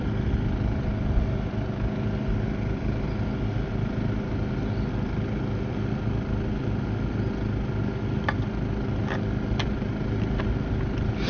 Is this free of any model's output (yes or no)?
yes